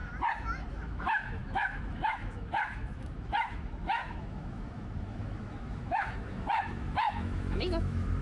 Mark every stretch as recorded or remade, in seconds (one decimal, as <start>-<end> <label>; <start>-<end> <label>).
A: 0.0-0.7 recorded; 0.7-8.2 remade